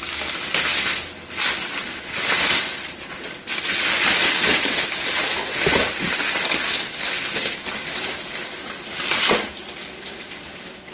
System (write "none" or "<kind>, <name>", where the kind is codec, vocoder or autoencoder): none